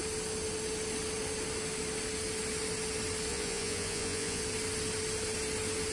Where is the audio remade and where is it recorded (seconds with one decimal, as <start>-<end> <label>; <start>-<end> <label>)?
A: 0.0-3.3 recorded; 3.3-4.4 remade; 4.4-5.9 recorded